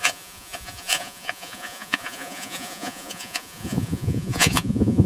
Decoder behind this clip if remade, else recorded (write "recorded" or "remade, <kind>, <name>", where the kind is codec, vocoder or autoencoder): remade, vocoder, Vocos